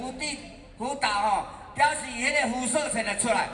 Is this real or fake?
real